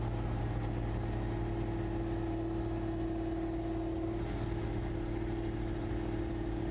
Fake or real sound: real